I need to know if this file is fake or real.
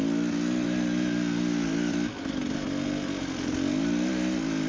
real